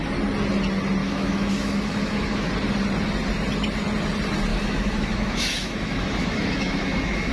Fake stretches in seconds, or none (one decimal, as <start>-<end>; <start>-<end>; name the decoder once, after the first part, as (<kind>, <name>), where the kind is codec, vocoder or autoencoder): 1.0-2.5 (autoencoder, DAC-VAE); 4.5-7.3